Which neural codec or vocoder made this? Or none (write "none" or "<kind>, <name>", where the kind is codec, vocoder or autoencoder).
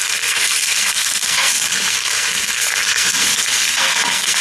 codec, SNAC